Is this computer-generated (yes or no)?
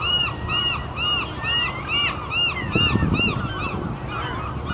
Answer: no